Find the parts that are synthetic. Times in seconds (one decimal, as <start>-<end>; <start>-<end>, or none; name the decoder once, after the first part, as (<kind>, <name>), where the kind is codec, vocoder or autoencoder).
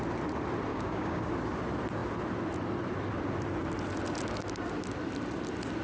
0.7-1.2 (codec, DAC)